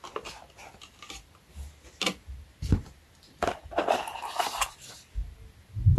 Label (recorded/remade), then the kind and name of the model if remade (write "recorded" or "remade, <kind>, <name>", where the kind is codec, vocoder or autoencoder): recorded